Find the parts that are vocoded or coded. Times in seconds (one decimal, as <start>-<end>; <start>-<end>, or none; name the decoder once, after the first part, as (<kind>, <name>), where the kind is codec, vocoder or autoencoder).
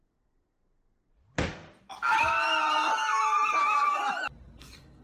0.0-0.6 (codec, SNAC); 3.6-4.0; 4.6-5.0